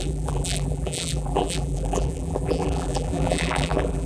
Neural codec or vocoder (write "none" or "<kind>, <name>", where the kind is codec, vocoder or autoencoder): vocoder, BigVGAN v2